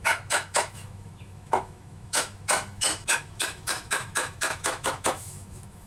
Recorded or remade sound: remade